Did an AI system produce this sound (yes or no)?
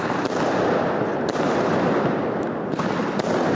no